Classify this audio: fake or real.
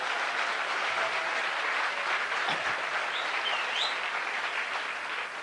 real